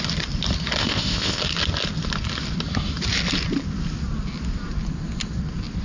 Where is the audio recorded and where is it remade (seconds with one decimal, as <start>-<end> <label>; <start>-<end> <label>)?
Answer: 0.0-0.8 recorded; 0.8-1.4 remade; 1.4-5.8 recorded